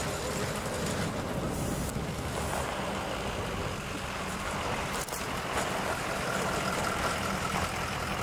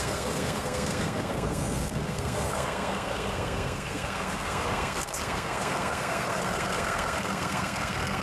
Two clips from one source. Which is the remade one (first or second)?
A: second